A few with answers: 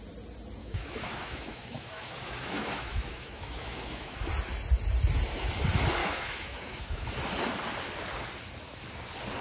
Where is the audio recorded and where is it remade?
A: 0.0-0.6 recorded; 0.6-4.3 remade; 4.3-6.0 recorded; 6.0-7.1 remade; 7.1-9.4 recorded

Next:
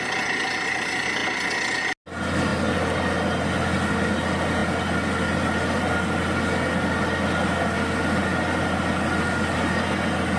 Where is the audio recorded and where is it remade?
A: 0.0-10.4 recorded

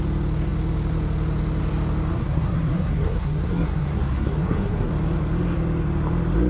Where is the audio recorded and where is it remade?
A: 0.0-2.1 recorded; 2.1-4.9 remade; 4.9-6.5 recorded

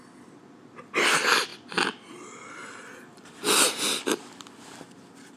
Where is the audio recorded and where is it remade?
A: 0.0-5.4 recorded

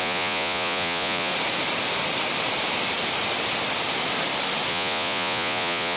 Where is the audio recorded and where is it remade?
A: 0.0-1.3 remade; 1.3-4.7 recorded; 4.7-6.0 remade

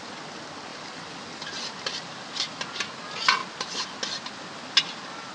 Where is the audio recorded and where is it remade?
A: 0.0-0.7 recorded; 0.7-2.6 remade; 2.6-5.3 recorded